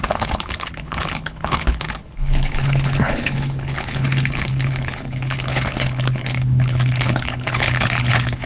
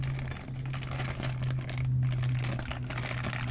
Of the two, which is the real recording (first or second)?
second